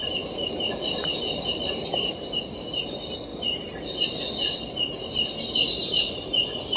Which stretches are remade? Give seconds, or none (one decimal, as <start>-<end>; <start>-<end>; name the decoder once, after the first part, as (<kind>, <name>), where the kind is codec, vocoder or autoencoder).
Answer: 0.0-2.4 (vocoder, BigVGAN v2); 3.3-6.8